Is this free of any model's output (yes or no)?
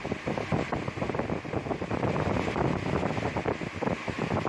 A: no